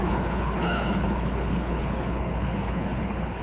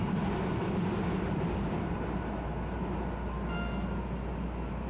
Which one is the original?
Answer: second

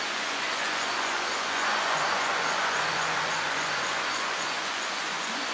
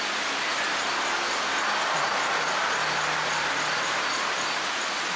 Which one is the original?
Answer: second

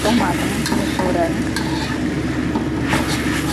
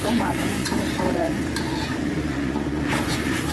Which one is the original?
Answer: first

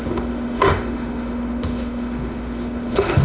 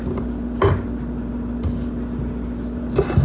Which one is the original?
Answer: second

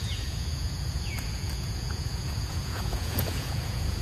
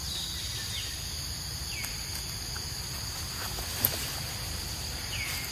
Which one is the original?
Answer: second